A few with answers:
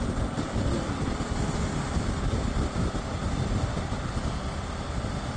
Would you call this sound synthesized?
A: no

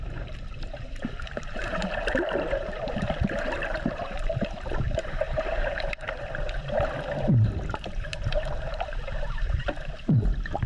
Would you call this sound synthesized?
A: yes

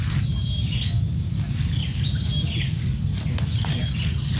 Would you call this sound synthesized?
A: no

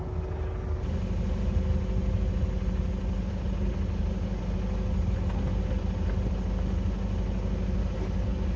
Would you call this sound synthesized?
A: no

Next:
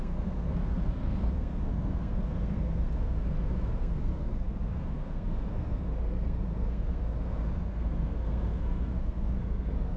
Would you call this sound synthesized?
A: yes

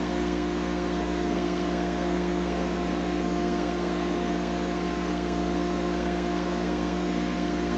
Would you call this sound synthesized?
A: yes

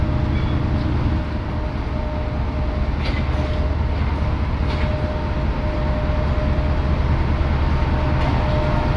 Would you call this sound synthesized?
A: no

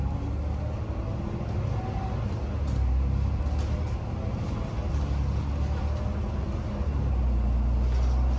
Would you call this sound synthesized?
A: no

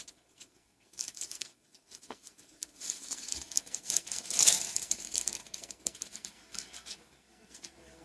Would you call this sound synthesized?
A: yes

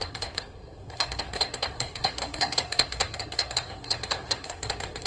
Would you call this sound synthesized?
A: yes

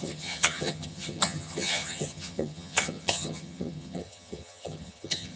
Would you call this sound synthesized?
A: yes